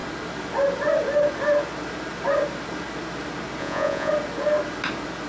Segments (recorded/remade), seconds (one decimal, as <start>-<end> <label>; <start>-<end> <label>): 0.0-3.6 recorded; 3.6-4.1 remade; 4.1-5.3 recorded